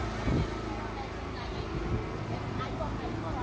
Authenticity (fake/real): real